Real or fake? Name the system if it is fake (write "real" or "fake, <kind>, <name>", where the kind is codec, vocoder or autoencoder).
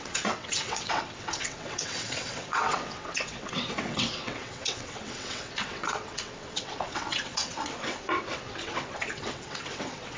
fake, vocoder, WaveNeXt